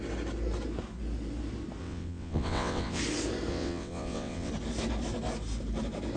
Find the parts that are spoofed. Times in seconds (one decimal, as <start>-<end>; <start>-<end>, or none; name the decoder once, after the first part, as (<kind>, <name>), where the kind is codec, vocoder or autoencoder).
1.8-3.0 (vocoder, WaveNeXt); 3.5-4.5